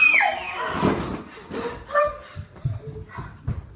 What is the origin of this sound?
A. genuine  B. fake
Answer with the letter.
A